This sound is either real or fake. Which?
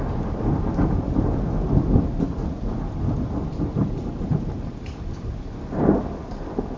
real